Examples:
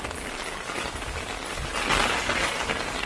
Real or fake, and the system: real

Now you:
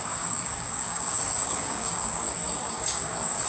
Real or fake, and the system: fake, codec, DAC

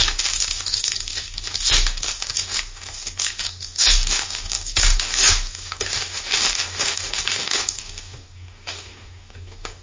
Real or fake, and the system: fake, codec, DAC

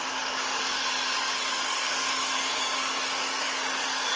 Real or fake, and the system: fake, codec, DAC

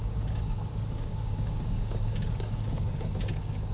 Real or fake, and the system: fake, codec, DAC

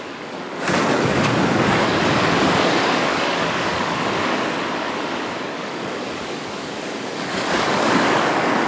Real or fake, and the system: fake, codec, DAC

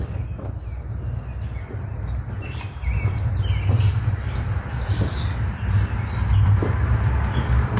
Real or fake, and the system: real